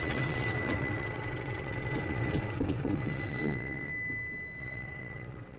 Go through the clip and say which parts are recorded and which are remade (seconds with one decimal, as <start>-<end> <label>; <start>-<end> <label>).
0.0-3.9 remade; 3.9-4.6 recorded; 4.6-5.6 remade